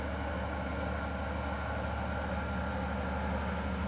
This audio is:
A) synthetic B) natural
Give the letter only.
B